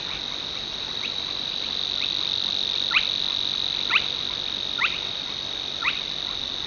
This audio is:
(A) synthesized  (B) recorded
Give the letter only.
B